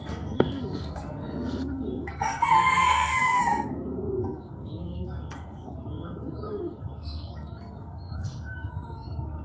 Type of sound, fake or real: fake